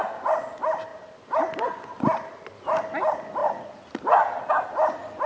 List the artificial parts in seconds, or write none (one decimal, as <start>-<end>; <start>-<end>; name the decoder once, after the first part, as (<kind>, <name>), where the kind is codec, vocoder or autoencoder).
none